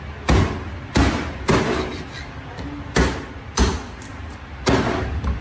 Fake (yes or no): no